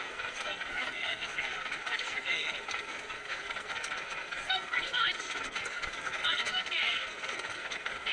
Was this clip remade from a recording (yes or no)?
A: yes